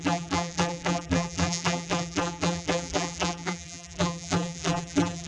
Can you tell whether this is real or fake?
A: fake